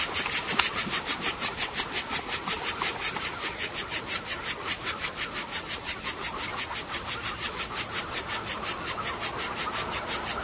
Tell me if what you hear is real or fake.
real